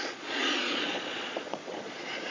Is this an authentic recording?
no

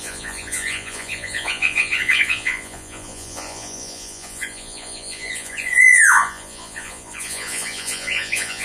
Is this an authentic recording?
no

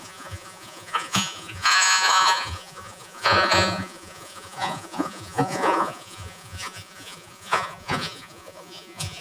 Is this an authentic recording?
no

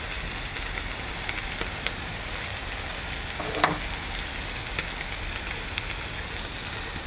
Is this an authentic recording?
yes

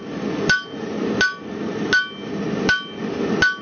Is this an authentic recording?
yes